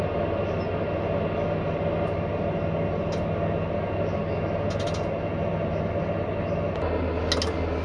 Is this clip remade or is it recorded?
recorded